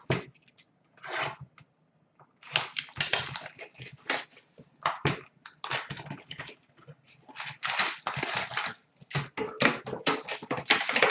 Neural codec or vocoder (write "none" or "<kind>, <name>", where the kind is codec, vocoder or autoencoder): none